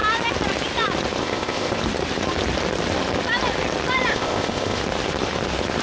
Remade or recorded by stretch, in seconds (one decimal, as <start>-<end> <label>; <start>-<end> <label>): 0.0-1.2 recorded; 1.2-1.8 remade; 1.8-4.1 recorded; 4.1-4.8 remade; 4.8-5.8 recorded

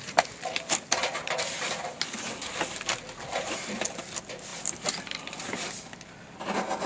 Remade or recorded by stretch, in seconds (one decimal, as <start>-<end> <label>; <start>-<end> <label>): 0.0-6.9 recorded

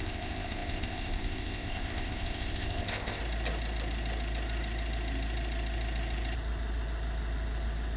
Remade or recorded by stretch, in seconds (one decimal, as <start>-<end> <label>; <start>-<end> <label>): 0.0-3.2 remade; 3.2-8.0 recorded

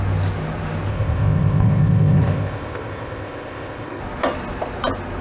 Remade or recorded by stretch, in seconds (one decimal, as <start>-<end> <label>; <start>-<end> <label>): 0.0-0.9 recorded; 0.9-4.0 remade; 4.0-5.2 recorded

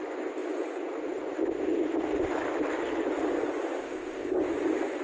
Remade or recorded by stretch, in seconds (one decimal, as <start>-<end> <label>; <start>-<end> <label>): 0.0-3.8 recorded; 3.8-4.4 remade; 4.4-5.0 recorded

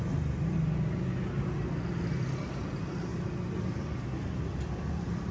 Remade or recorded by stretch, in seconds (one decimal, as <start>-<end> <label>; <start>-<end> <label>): 0.0-5.3 recorded

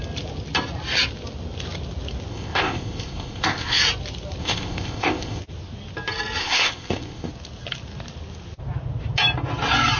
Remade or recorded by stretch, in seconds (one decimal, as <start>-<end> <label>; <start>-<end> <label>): 0.0-2.3 recorded; 2.3-3.8 remade; 3.8-4.4 recorded; 4.4-5.4 remade; 5.4-6.4 recorded; 6.4-7.3 remade; 7.3-10.0 recorded